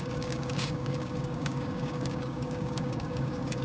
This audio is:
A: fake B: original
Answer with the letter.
A